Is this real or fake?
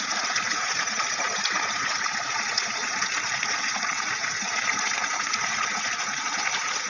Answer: fake